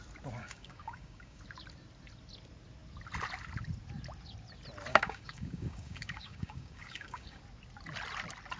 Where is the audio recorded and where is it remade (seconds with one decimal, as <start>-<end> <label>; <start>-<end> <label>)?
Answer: 0.0-0.4 recorded; 0.4-1.4 remade; 1.4-4.9 recorded; 4.9-7.4 remade; 7.4-8.6 recorded